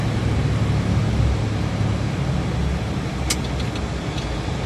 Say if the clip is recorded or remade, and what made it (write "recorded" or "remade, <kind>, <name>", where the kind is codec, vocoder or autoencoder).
recorded